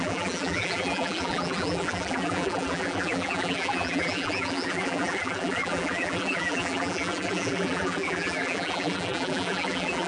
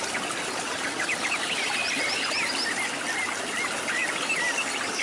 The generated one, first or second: first